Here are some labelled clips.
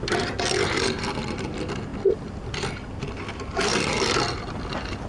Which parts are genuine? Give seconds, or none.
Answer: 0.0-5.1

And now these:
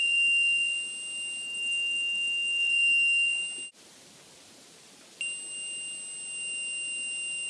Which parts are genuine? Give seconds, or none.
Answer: 0.0-1.4; 2.7-7.5

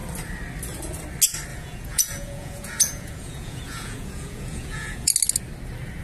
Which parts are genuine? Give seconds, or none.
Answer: 0.0-1.5; 5.1-6.0